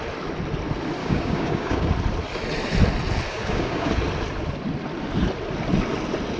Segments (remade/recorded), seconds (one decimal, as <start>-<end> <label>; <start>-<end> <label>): 0.0-1.0 recorded; 1.0-1.9 remade; 1.9-3.3 recorded; 3.3-3.9 remade; 3.9-6.4 recorded